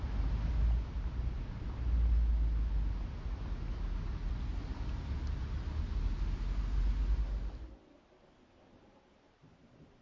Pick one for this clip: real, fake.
real